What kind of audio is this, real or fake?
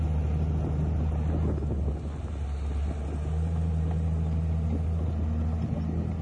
real